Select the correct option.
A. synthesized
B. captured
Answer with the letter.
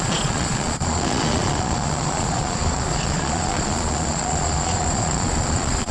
A